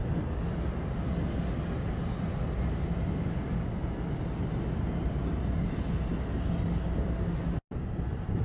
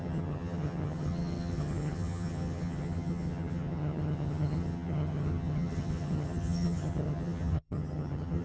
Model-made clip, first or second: second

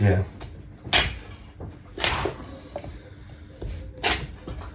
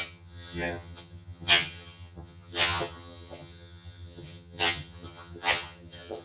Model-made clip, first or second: second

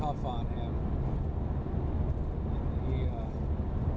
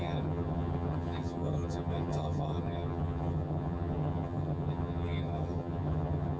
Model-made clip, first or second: second